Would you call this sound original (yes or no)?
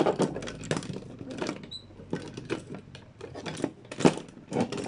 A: yes